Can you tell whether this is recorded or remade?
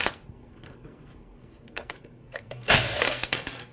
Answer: remade